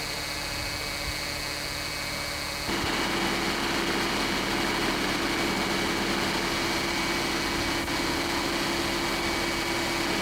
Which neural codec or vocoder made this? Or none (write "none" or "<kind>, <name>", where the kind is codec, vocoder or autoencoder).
none